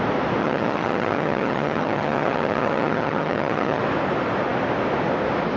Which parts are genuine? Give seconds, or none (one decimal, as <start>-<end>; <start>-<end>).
0.0-0.4; 3.8-5.6